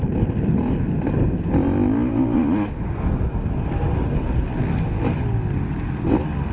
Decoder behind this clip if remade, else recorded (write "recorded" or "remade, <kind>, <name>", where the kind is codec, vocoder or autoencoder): recorded